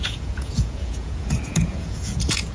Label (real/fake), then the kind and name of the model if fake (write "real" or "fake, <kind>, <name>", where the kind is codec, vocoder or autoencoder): fake, vocoder, Vocos